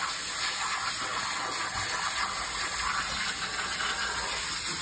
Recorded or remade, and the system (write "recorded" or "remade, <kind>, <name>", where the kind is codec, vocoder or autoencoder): recorded